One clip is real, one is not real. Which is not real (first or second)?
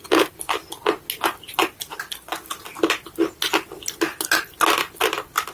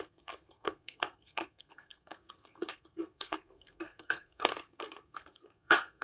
second